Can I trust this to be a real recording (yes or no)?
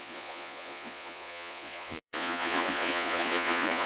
no